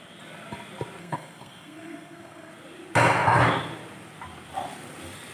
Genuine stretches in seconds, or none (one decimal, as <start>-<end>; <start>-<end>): 0.0-1.0; 2.5-5.3